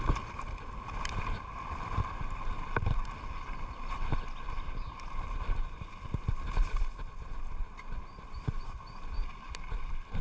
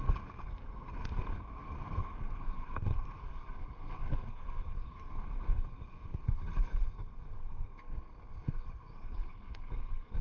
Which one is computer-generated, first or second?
second